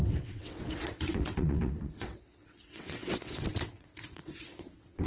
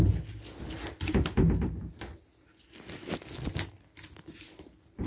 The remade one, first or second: first